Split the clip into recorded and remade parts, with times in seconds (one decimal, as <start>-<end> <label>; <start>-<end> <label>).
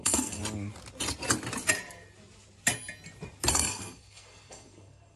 0.0-0.4 remade; 0.4-3.5 recorded; 3.5-5.2 remade